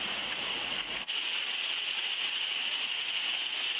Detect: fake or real fake